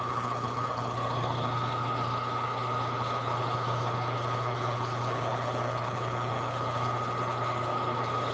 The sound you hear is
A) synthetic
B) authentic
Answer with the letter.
A